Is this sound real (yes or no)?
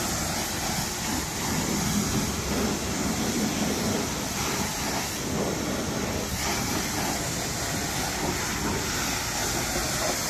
yes